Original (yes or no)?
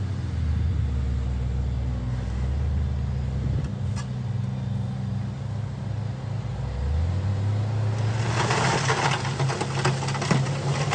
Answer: yes